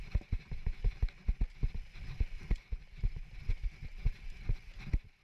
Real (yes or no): yes